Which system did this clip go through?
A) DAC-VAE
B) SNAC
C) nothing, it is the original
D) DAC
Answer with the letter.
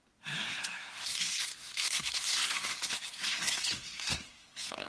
B